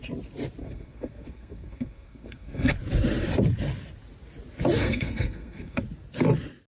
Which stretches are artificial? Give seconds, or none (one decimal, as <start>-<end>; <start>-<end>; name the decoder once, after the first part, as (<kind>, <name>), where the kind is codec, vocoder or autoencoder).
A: 0.6-2.7 (codec, SNAC); 4.8-5.8